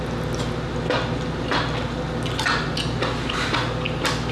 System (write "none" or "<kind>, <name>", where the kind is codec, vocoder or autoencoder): none